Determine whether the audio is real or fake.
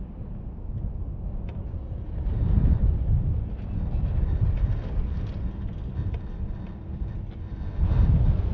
real